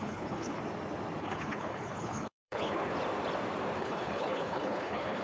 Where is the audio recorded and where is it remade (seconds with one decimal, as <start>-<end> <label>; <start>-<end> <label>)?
0.0-0.6 remade; 0.6-1.2 recorded; 1.2-2.9 remade; 2.9-3.8 recorded; 3.8-5.2 remade